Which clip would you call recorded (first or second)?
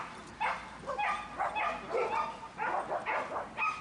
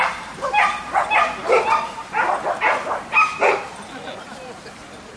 first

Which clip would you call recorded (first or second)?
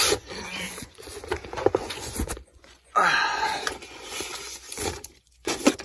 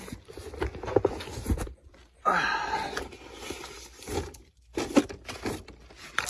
second